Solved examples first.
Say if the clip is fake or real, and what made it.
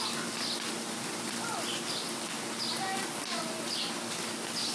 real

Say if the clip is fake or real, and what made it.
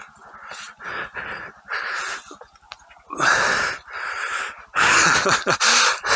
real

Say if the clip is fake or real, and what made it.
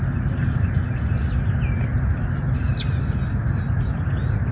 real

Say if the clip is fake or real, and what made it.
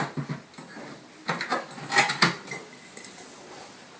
real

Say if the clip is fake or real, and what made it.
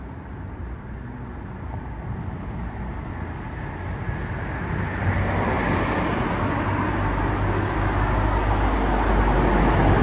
real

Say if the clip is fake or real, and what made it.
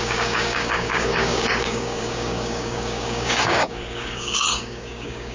fake, codec, DAC